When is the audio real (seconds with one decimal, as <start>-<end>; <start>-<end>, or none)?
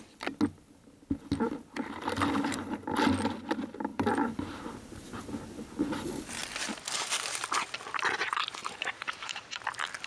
0.0-3.9; 5.2-8.2; 9.6-10.1